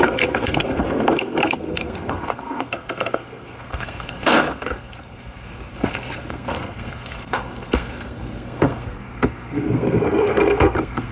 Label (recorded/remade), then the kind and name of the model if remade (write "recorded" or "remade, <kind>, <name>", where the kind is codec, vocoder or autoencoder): remade, codec, SNAC